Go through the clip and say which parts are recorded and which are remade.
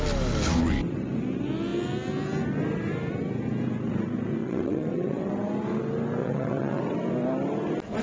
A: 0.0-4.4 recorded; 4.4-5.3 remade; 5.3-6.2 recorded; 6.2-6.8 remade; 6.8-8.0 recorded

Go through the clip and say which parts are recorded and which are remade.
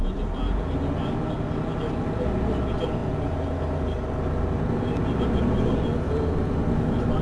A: 0.0-7.2 recorded